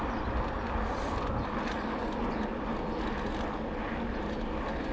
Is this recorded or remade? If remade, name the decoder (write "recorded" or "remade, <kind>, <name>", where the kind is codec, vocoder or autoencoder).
recorded